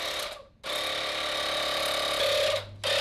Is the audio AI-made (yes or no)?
no